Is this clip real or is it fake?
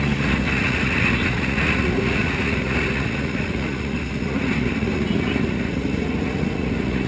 fake